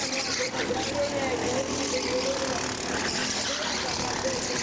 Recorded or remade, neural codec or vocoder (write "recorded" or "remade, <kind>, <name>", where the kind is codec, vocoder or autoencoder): recorded